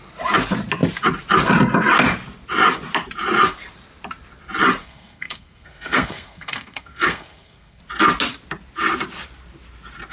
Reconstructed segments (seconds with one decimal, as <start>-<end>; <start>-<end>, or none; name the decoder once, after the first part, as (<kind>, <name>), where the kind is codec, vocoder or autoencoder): 4.8-7.8 (codec, SNAC)